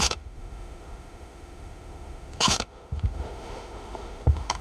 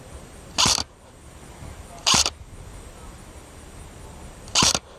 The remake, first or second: first